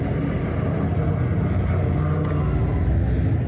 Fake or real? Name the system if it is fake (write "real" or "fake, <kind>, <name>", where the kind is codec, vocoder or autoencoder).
real